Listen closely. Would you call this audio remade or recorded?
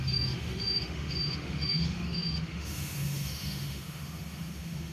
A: remade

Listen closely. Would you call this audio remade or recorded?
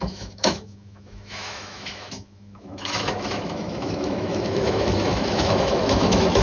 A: remade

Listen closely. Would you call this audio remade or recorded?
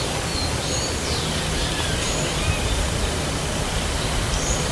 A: recorded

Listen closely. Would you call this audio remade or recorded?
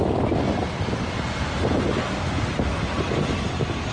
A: recorded